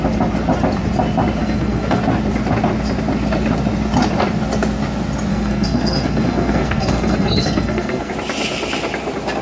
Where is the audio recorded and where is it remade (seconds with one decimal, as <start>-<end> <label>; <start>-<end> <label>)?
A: 0.0-1.4 recorded; 1.4-2.0 remade; 2.0-5.3 recorded; 5.3-8.1 remade; 8.1-9.4 recorded